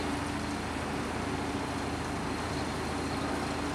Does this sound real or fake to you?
real